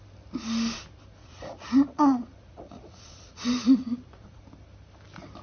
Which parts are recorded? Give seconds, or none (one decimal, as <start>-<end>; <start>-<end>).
0.0-1.2; 4.4-5.4